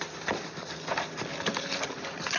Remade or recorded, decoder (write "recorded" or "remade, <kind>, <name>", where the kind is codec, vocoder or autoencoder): recorded